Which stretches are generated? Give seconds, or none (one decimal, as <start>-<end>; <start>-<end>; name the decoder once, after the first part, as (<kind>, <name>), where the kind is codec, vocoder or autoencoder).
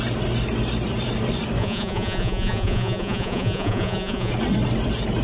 1.6-4.3 (vocoder, Vocos)